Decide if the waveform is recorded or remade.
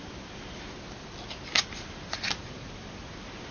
recorded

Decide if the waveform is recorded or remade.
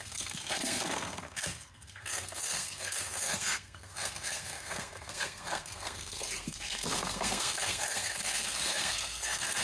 remade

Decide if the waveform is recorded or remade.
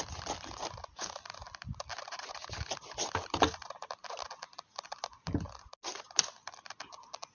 recorded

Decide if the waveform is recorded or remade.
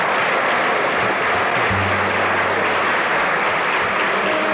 recorded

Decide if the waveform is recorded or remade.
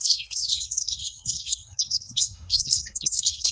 remade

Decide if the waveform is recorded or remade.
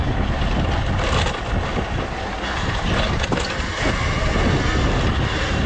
recorded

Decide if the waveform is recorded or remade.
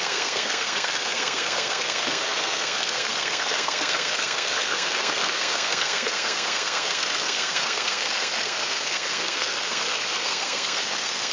remade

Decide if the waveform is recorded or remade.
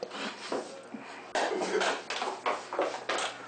recorded